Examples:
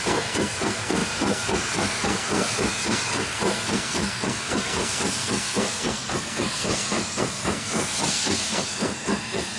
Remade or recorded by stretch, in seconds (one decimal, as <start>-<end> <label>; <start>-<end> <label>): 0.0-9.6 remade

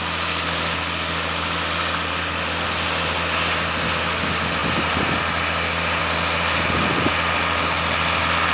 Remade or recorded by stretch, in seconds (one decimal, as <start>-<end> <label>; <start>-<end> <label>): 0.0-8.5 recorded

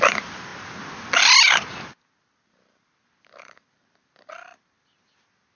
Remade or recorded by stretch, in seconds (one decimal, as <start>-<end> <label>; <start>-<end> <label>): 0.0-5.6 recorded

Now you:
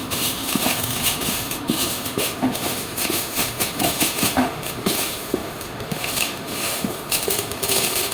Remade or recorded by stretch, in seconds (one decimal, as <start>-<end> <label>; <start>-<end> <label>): 0.0-8.1 remade